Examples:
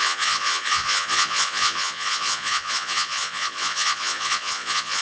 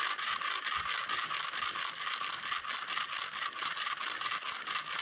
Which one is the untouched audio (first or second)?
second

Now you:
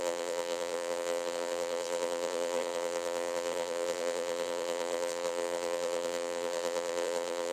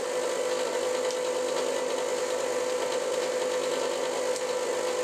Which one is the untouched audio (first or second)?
second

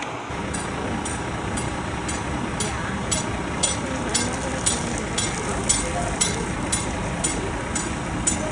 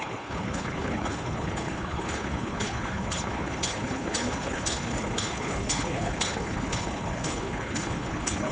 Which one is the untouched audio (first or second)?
first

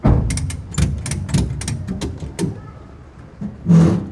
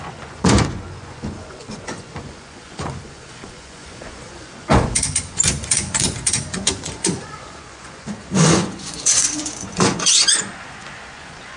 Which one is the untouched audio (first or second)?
first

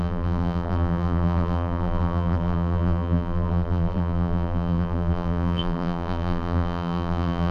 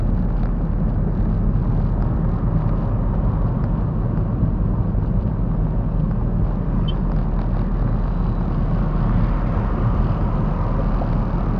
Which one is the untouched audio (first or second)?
second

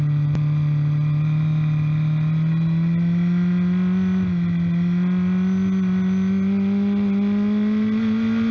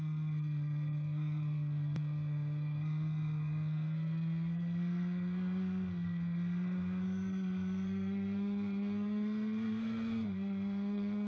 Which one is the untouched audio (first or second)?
first